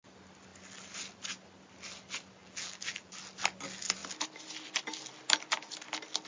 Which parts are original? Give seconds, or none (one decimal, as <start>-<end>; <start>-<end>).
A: 0.0-2.4; 3.1-6.3